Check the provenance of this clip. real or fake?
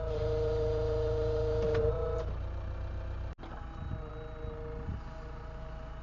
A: real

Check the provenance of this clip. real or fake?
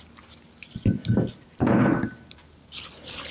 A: real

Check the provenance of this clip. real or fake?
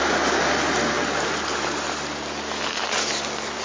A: real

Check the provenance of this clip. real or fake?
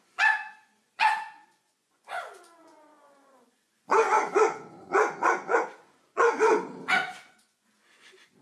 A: fake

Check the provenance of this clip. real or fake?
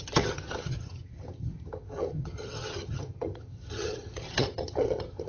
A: fake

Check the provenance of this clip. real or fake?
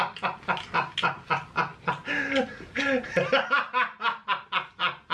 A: real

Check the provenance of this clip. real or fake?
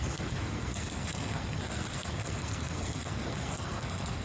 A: fake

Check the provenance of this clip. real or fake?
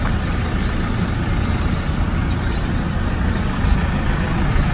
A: real